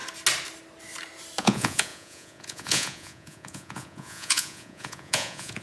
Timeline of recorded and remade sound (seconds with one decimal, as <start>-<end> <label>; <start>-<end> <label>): 0.0-1.4 recorded; 1.4-5.6 remade